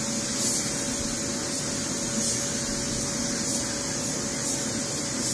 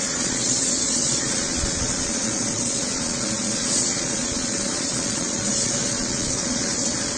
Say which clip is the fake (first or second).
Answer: second